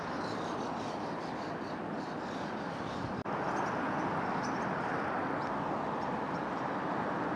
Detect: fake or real real